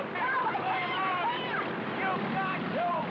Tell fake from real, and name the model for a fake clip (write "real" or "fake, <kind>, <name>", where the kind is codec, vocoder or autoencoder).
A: real